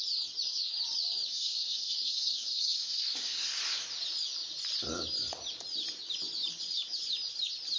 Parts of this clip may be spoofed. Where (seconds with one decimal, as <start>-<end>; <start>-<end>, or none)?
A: 1.3-3.6